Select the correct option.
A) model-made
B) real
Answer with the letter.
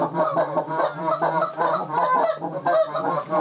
B